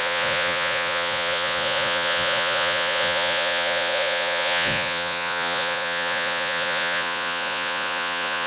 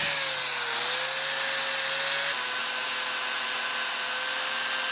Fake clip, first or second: first